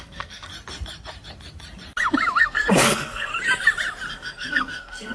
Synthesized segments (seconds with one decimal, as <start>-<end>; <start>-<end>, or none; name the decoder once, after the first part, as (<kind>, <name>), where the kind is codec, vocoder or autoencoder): 0.0-0.5 (codec, SNAC); 2.4-3.3; 4.1-5.1